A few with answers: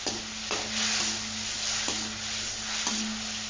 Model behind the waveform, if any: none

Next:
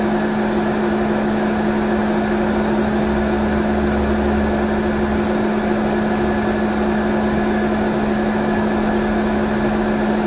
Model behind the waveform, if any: none